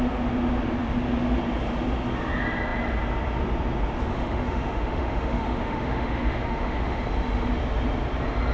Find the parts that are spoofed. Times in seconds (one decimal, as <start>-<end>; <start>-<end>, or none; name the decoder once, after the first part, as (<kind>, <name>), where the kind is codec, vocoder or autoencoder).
4.1-7.0 (autoencoder, DAC-VAE)